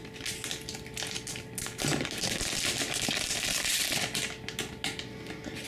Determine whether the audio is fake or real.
real